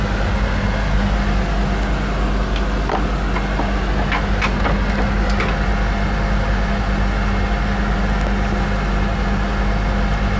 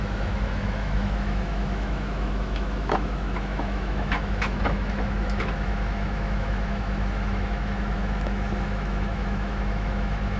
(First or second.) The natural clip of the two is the first